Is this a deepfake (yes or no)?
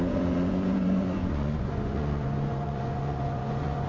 yes